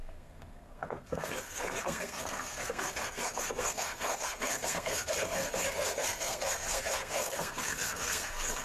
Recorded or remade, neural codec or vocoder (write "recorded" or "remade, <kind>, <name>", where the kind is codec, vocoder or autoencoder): remade, codec, SNAC